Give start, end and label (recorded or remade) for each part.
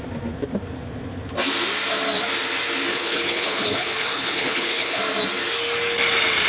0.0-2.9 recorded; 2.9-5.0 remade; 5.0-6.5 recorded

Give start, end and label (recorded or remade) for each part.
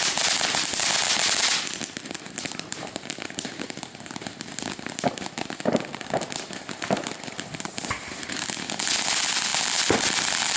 0.0-10.6 remade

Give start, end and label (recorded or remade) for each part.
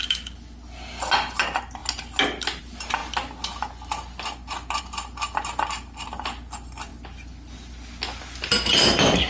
0.0-9.3 recorded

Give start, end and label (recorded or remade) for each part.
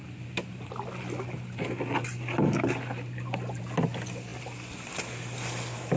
0.0-6.0 recorded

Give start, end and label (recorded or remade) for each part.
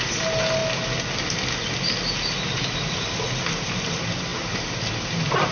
0.0-5.5 recorded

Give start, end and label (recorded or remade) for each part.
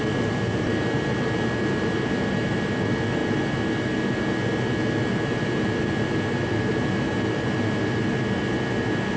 0.0-9.2 recorded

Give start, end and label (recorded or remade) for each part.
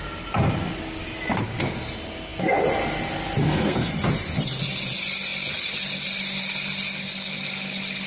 0.0-3.4 recorded; 3.4-3.9 remade; 3.9-8.1 recorded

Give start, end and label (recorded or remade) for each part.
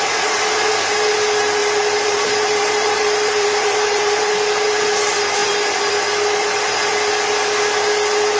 0.0-1.6 recorded; 1.6-4.3 remade; 4.3-5.4 recorded; 5.4-5.9 remade; 5.9-8.4 recorded